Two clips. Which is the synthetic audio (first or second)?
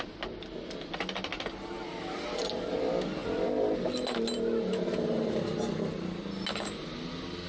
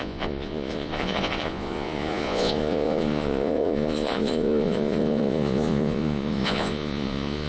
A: second